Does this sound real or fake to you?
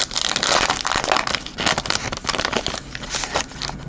real